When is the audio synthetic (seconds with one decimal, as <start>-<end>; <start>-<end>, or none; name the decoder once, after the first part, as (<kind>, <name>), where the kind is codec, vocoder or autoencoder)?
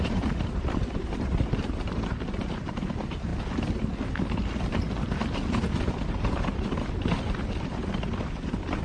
0.0-3.3 (vocoder, BigVGAN v2); 6.3-8.8